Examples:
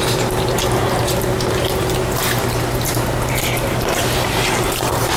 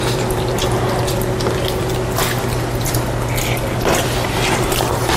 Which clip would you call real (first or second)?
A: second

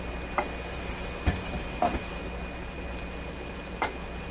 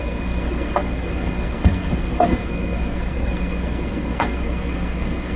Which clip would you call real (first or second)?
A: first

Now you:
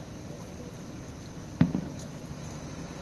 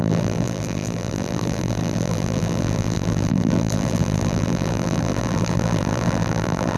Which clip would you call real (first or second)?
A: first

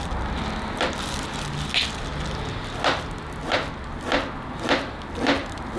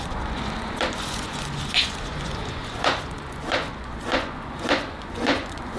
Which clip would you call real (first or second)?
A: first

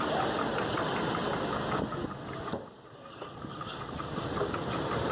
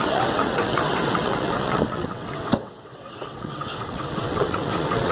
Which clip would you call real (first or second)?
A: first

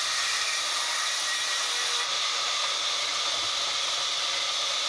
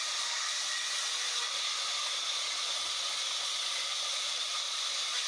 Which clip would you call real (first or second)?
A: first